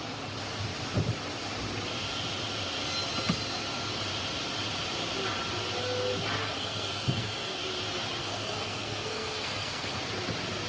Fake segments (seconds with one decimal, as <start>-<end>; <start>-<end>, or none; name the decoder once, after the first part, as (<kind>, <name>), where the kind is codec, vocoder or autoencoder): 6.4-7.6 (codec, SNAC); 8.2-10.0